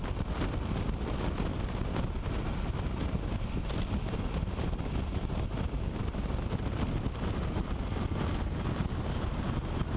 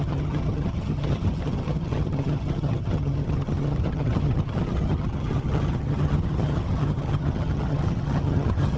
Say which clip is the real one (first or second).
first